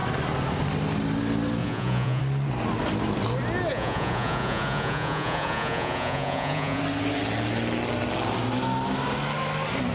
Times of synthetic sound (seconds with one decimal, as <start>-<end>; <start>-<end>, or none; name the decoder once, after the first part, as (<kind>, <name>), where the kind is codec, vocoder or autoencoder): 1.6-2.2 (vocoder, Vocos); 3.7-6.8